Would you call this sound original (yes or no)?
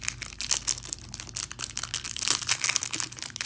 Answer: yes